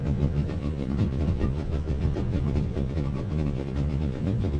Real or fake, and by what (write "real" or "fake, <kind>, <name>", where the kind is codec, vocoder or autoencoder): fake, vocoder, Vocos